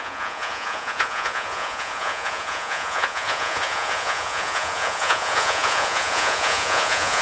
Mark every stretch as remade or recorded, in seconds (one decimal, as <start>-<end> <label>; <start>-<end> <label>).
0.0-7.2 remade